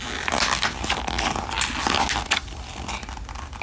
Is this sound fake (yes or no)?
no